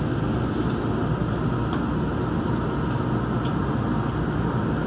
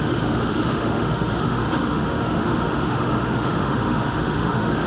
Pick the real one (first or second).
first